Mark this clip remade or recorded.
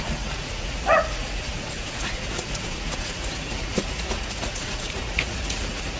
remade